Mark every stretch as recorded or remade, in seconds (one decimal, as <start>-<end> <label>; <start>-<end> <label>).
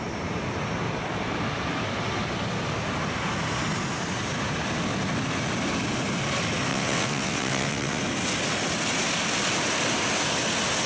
0.0-6.7 recorded; 6.7-8.0 remade; 8.0-10.9 recorded